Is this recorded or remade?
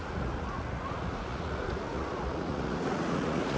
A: remade